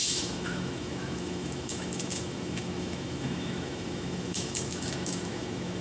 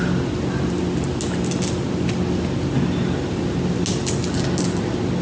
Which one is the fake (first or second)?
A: first